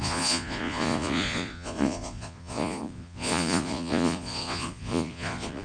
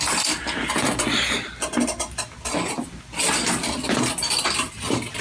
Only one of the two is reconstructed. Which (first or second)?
first